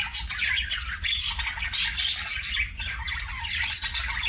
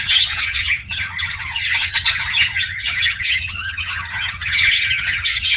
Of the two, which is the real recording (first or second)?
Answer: first